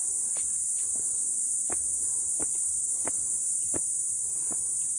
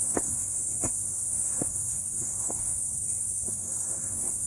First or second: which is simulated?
second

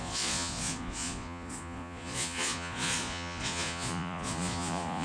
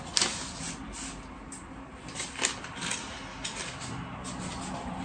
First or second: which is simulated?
first